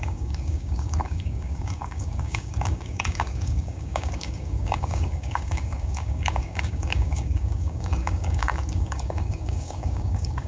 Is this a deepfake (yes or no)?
yes